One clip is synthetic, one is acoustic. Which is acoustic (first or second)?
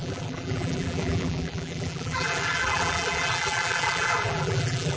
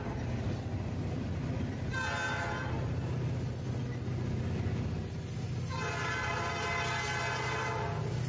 second